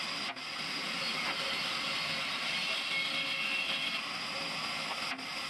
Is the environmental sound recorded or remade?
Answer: recorded